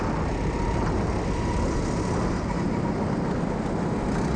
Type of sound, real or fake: real